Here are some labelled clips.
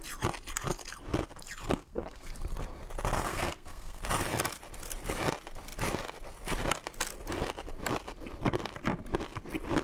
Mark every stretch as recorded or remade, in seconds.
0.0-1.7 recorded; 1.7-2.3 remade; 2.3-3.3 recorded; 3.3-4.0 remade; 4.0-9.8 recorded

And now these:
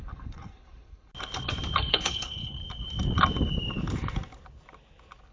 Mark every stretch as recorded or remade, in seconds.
0.0-1.1 remade; 1.1-1.9 recorded; 1.9-2.6 remade; 2.6-5.3 recorded

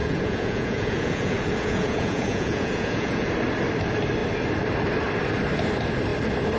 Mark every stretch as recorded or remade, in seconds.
0.0-3.3 remade; 3.3-6.6 recorded

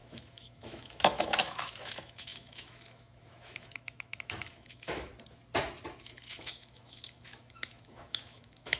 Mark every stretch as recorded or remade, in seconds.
0.0-5.1 remade; 5.1-6.0 recorded; 6.0-8.8 remade

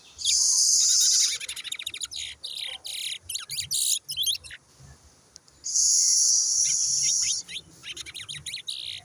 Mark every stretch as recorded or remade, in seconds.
0.0-9.0 recorded

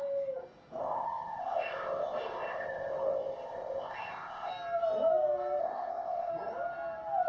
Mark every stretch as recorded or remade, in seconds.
0.0-0.8 recorded; 0.8-4.5 remade; 4.5-5.6 recorded; 5.6-6.3 remade; 6.3-7.3 recorded